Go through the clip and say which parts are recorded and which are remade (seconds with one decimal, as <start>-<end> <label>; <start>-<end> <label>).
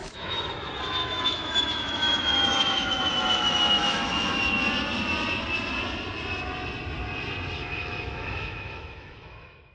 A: 0.0-0.5 remade; 0.5-1.0 recorded; 1.0-4.4 remade; 4.4-7.6 recorded; 7.6-9.7 remade